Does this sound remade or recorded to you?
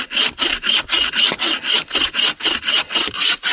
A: recorded